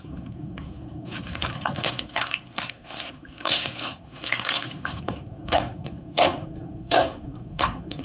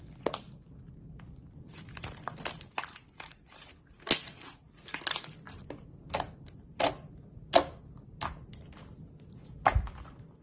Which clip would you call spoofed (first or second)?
first